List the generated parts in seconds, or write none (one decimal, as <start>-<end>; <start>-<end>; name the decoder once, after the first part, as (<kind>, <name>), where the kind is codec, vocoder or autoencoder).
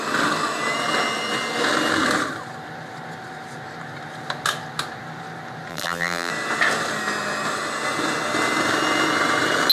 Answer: 5.7-6.3 (vocoder, BigVGAN v2)